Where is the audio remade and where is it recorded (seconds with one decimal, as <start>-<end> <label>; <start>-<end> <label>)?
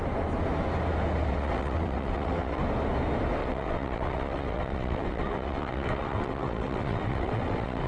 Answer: 0.0-1.3 recorded; 1.3-2.6 remade; 2.6-3.4 recorded; 3.4-7.9 remade